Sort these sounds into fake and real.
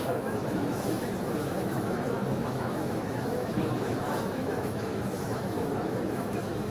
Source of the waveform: fake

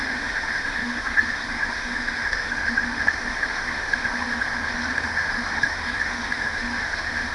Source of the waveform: fake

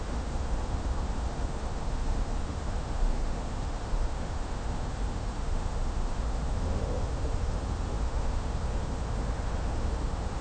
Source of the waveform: fake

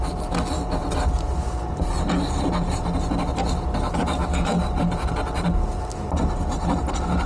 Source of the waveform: real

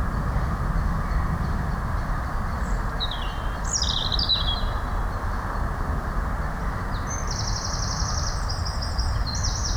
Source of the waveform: real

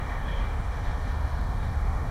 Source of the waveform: fake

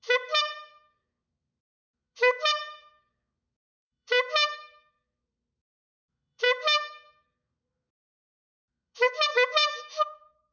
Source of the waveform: fake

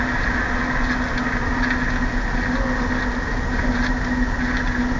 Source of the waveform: real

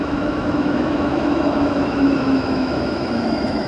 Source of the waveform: fake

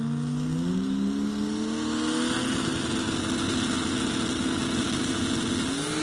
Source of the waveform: real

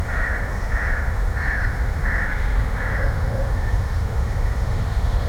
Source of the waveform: fake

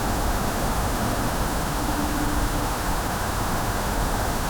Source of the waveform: fake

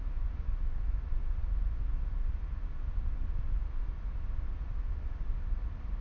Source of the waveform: real